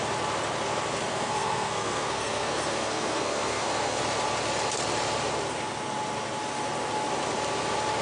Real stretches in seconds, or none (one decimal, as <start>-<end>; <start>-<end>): 0.0-1.1; 4.0-8.0